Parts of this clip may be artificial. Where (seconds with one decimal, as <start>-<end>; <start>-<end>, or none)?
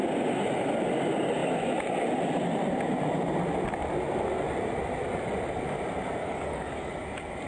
6.2-6.9